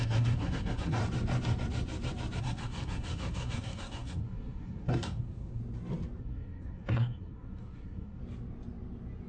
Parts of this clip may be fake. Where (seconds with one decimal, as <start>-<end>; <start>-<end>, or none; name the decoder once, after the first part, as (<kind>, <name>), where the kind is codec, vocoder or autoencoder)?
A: 0.0-1.0 (codec, SNAC); 2.4-5.6; 6.2-8.2